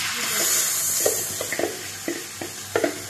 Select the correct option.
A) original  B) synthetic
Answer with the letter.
A